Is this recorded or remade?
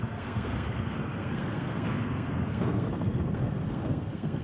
remade